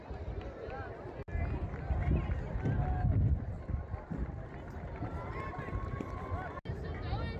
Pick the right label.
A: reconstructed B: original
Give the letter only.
B